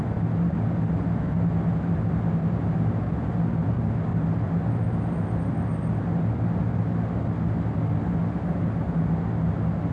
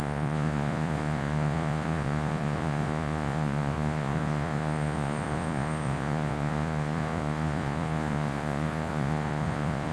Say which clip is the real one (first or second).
first